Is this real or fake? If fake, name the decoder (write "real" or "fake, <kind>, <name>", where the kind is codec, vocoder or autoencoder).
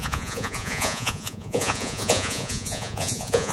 fake, vocoder, Vocos